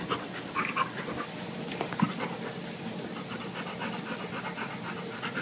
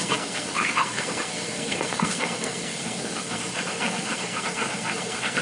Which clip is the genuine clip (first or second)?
first